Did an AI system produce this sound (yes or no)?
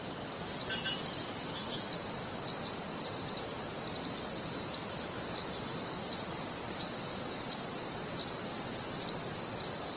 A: no